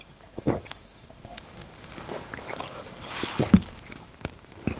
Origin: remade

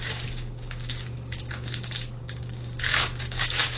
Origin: remade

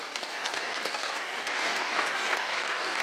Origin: remade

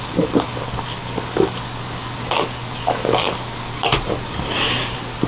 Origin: remade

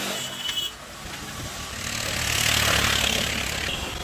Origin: recorded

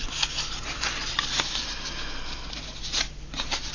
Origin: recorded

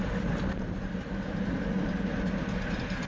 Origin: recorded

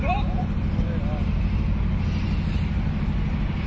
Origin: recorded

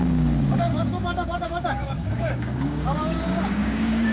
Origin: remade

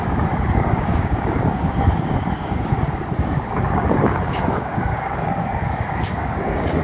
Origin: remade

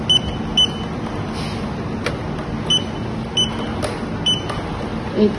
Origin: recorded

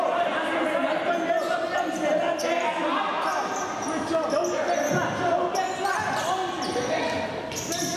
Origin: recorded